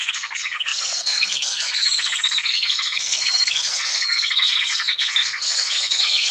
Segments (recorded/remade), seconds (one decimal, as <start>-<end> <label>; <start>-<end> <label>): 0.0-6.3 remade